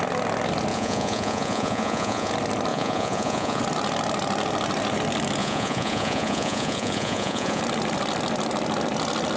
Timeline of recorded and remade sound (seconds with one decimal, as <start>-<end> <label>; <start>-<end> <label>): 0.0-0.7 recorded; 0.7-2.3 remade; 2.3-2.7 recorded; 2.7-3.6 remade; 3.6-5.4 recorded; 5.4-7.6 remade; 7.6-9.4 recorded